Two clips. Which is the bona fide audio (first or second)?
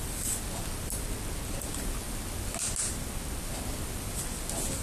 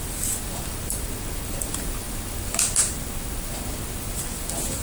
first